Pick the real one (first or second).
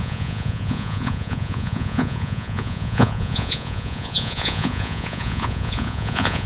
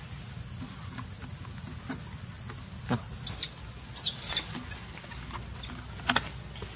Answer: second